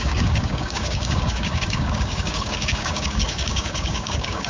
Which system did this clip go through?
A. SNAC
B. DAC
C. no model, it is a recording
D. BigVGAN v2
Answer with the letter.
B